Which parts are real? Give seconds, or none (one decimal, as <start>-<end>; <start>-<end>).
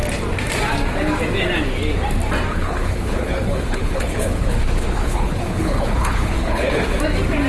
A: 0.0-2.5; 7.0-7.5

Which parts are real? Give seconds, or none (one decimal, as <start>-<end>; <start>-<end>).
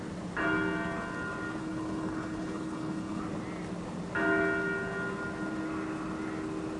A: 0.0-1.6; 3.2-6.8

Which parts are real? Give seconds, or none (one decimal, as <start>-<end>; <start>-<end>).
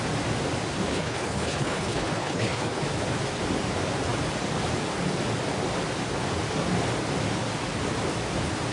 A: 0.0-0.9; 2.8-8.7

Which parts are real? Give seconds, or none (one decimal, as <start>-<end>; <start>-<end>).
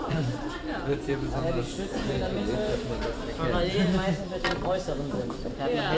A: 0.0-6.0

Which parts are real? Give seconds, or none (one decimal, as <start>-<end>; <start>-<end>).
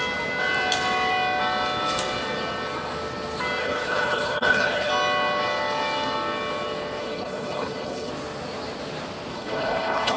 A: 0.0-3.6; 4.9-7.0; 8.1-9.3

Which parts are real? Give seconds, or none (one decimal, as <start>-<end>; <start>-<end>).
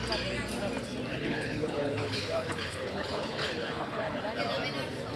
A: 0.0-1.1; 4.2-5.2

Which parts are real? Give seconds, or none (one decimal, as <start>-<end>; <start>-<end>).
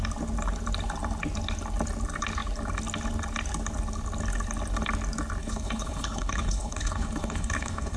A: 0.0-5.4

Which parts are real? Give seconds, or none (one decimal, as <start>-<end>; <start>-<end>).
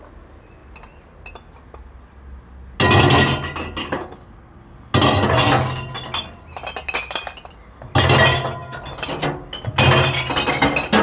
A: 0.0-3.8; 4.3-11.0